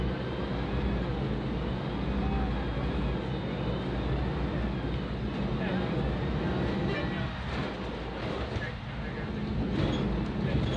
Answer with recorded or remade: recorded